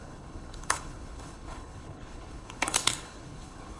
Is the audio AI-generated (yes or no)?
yes